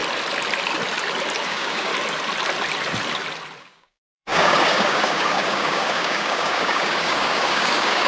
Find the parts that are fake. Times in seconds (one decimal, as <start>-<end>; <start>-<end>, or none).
1.4-1.9; 3.6-8.1